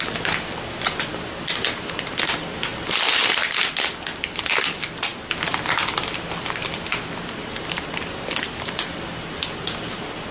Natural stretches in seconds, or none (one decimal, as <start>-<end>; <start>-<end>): 0.0-10.3